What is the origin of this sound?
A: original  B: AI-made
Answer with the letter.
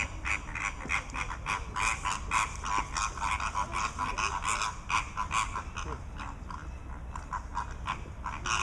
A